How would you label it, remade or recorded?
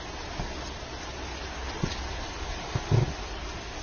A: recorded